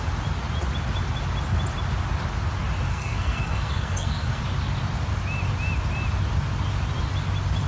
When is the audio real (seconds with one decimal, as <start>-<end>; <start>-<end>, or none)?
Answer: 0.0-2.9; 4.4-7.7